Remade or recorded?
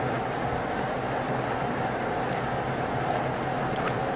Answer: recorded